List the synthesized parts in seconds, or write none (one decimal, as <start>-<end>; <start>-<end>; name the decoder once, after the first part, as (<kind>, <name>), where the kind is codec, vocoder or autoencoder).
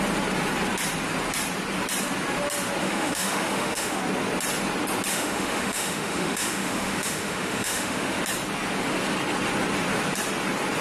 2.8-4.0 (autoencoder, DAC-VAE); 5.1-8.2